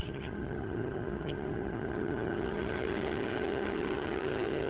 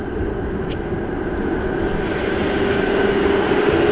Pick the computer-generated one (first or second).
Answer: first